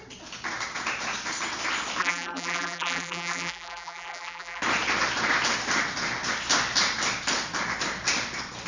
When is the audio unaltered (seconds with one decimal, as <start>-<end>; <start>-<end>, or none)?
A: 0.0-2.0; 4.6-8.7